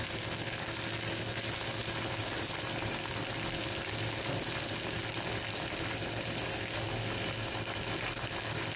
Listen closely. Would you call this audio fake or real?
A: real